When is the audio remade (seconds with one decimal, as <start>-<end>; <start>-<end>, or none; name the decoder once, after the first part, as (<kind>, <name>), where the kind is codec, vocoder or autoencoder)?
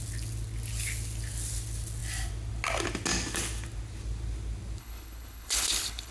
4.8-6.1 (codec, HILCodec)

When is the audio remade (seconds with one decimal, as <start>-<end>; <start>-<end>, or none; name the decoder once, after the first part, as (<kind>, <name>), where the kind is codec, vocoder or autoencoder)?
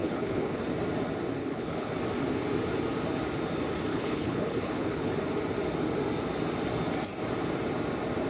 0.0-0.6 (codec, HILCodec); 1.4-1.9; 3.9-5.1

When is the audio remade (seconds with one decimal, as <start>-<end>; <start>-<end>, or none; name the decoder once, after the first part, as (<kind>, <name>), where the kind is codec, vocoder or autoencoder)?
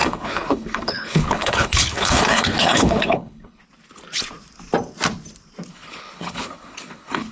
0.0-3.6 (codec, HILCodec); 5.7-7.3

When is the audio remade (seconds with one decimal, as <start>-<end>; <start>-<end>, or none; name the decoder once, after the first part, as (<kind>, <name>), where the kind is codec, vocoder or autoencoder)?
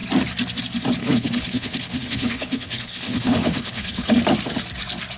1.0-4.1 (codec, HILCodec)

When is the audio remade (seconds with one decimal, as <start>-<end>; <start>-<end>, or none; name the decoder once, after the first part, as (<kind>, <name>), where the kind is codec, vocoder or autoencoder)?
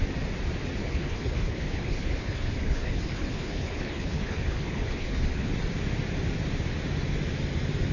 0.8-5.5 (codec, HILCodec)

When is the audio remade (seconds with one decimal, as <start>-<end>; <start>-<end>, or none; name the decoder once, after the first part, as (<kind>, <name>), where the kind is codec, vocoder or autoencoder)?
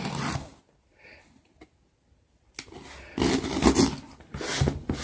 none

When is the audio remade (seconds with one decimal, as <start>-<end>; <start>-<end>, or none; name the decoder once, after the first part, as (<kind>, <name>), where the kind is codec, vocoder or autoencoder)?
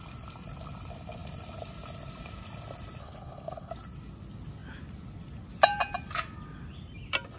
3.0-3.7 (codec, HILCodec)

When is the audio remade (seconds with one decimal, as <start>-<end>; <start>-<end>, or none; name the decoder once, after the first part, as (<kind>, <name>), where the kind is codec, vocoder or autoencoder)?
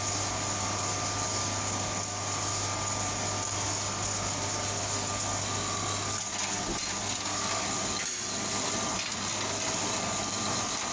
none